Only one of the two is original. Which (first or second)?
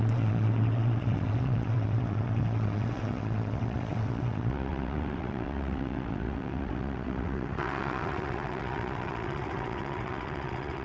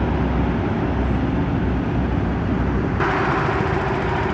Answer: second